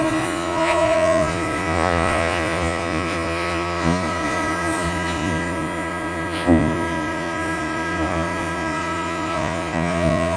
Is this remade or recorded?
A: remade